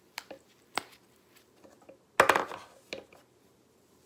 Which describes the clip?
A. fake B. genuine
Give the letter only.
B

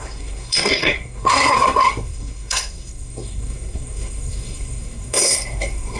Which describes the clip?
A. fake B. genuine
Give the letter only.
A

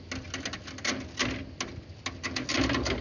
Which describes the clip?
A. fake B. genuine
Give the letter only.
B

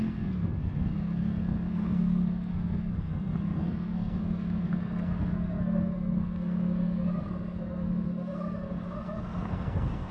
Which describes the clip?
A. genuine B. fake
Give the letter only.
B